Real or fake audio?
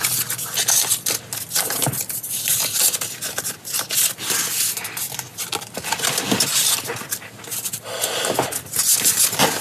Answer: real